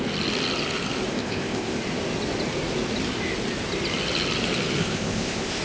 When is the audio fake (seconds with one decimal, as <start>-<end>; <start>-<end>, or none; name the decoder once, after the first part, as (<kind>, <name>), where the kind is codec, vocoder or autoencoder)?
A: 1.1-1.8 (codec, ZipCodec); 4.8-5.6